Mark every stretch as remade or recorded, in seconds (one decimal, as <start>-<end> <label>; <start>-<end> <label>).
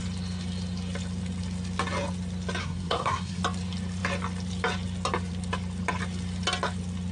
0.0-2.6 recorded; 2.6-3.4 remade; 3.4-7.1 recorded